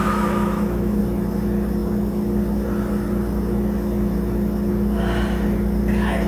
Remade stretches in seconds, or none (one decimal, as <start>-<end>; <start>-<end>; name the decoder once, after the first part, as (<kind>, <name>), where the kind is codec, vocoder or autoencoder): 0.0-1.0 (autoencoder, DAC-VAE)

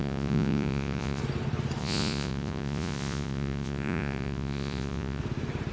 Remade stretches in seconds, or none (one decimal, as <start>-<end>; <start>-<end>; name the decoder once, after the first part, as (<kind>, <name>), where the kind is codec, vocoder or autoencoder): 0.0-1.2 (vocoder, Vocos); 1.8-5.2

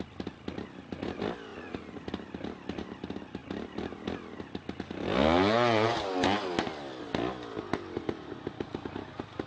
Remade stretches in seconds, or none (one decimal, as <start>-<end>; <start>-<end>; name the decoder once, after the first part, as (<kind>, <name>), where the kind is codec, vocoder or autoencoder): 1.5-2.1 (vocoder, Vocos)

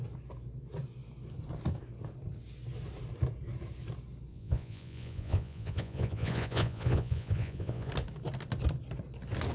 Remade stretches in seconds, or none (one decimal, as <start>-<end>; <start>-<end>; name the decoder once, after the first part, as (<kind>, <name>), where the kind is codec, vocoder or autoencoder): 4.3-7.9 (vocoder, Vocos)

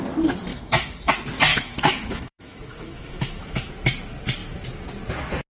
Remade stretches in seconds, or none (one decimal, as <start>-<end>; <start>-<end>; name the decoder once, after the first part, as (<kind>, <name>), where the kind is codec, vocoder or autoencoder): 0.5-1.1 (autoencoder, DAC-VAE); 1.5-3.7

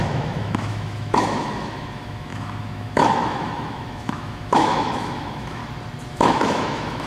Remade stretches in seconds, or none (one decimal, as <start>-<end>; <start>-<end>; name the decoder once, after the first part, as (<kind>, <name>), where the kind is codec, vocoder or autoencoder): 0.0-5.6 (autoencoder, DAC-VAE); 6.1-7.1

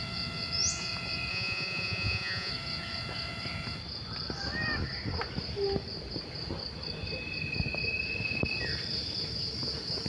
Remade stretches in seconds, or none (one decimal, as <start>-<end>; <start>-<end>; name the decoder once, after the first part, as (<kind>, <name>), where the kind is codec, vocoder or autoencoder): 1.3-2.5 (vocoder, Vocos)